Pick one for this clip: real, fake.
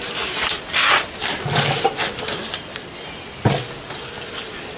real